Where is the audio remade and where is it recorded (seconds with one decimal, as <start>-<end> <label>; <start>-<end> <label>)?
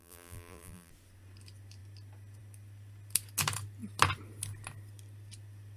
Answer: 0.0-0.9 remade; 0.9-5.8 recorded